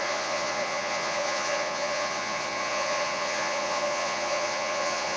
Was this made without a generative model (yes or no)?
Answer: no